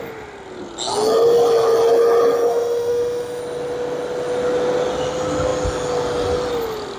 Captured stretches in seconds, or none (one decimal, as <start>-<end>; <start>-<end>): 0.0-2.5; 3.4-7.0